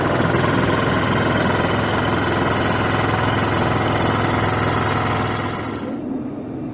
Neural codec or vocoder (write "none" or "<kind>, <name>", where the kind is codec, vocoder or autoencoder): none